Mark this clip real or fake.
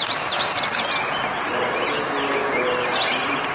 real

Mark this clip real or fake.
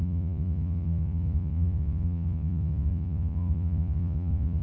fake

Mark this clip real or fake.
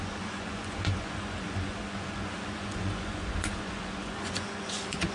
fake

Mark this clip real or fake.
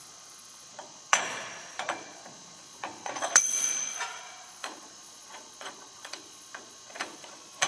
fake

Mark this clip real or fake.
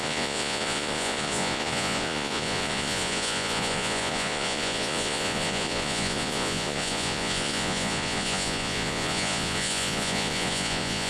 fake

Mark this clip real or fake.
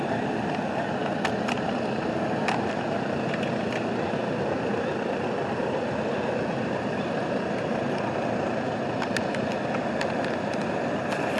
real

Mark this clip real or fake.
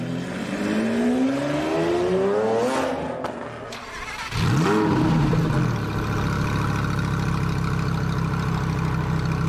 real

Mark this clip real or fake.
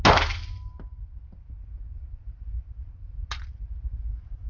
real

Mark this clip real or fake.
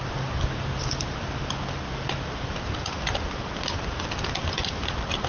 real